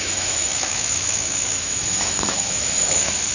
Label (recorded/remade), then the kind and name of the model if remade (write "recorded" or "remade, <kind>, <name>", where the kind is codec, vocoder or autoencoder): remade, autoencoder, DAC-VAE